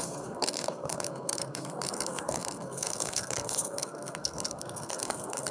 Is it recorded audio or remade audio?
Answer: remade